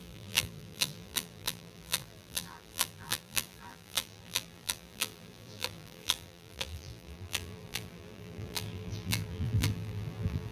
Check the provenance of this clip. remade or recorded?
remade